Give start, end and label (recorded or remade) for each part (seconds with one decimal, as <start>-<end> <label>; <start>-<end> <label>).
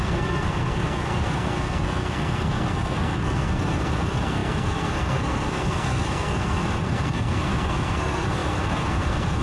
0.0-9.4 remade